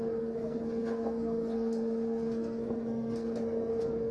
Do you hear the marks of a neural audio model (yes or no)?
yes